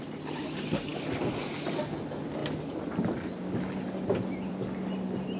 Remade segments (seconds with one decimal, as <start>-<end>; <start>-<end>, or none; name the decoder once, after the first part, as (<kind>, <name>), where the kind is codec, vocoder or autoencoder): none